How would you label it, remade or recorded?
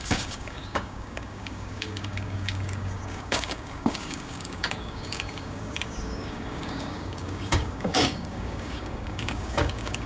remade